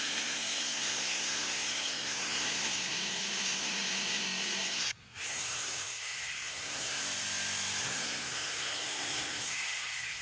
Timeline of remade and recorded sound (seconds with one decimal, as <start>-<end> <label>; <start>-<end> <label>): 0.0-7.0 remade; 7.0-7.8 recorded; 7.8-10.2 remade